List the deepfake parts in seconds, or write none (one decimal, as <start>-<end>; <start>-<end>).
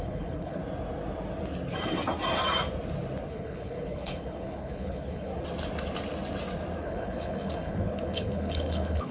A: 0.0-0.6; 3.3-5.3; 6.8-9.1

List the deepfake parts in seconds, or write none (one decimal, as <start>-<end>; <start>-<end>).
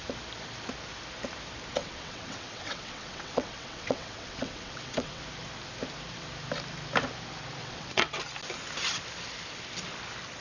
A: 1.8-5.2; 7.6-8.2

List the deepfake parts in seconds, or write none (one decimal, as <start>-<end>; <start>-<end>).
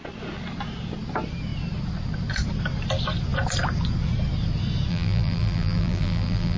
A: 4.9-6.6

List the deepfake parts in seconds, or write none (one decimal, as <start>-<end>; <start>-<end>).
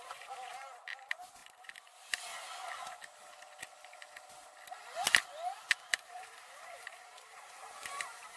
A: 0.0-1.4; 3.6-4.5; 6.1-8.4